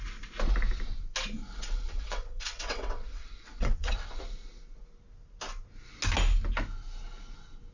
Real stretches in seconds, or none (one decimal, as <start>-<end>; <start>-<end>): 0.0-1.4; 4.2-7.7